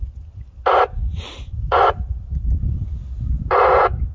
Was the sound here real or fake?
real